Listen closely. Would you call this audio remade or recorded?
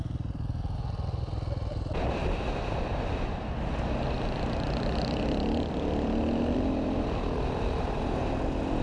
recorded